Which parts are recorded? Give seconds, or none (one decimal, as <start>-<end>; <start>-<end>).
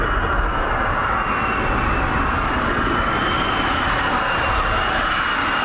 0.0-5.6